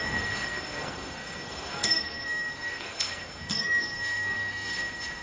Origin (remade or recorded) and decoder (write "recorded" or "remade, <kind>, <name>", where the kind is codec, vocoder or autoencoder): remade, codec, SNAC